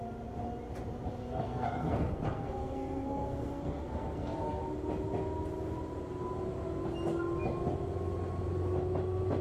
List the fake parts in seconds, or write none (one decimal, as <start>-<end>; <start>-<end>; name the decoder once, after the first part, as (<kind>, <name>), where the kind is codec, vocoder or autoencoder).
1.2-4.6 (codec, SNAC)